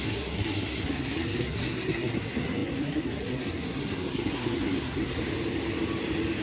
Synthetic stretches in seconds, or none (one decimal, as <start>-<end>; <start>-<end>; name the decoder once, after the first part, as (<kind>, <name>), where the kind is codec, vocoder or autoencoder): 0.0-5.2 (codec, SNAC)